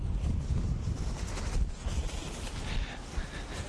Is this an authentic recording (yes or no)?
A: yes